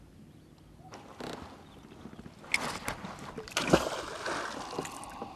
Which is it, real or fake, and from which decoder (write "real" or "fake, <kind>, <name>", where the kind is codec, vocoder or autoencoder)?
real